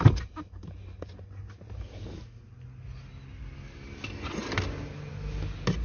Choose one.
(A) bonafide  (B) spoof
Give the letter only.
A